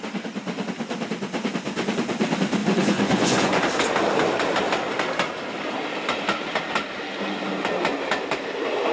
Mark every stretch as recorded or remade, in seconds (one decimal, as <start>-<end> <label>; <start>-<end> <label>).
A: 0.0-2.6 recorded; 2.6-3.6 remade; 3.6-8.9 recorded